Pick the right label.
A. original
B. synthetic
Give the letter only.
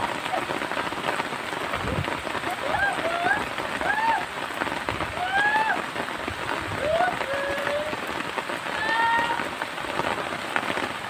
A